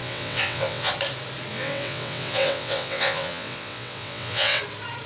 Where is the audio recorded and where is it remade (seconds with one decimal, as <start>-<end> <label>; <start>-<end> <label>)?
0.0-0.9 remade; 0.9-1.5 recorded; 1.5-4.6 remade; 4.6-5.1 recorded